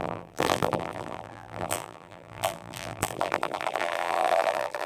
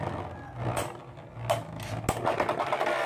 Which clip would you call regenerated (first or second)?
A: first